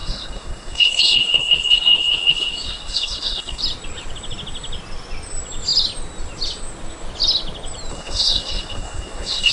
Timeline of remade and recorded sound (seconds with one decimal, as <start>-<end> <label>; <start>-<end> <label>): 0.0-3.6 remade; 3.6-7.9 recorded; 7.9-9.5 remade

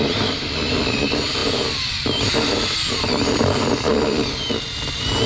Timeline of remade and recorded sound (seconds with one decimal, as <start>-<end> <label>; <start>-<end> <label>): 0.0-5.3 recorded

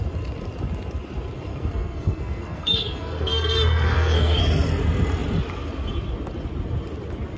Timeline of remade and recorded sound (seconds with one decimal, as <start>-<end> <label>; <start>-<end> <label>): 0.0-1.5 recorded; 1.5-4.4 remade; 4.4-7.4 recorded